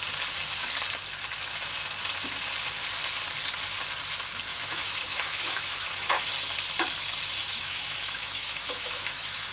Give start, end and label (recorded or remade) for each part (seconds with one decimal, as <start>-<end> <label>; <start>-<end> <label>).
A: 0.0-4.5 recorded; 4.5-6.3 remade; 6.3-7.4 recorded; 7.4-9.5 remade